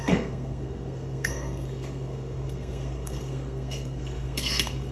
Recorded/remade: remade